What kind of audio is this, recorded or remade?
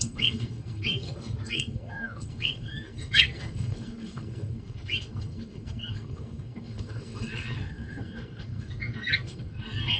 remade